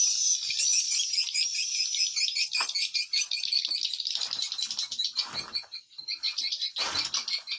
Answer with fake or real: real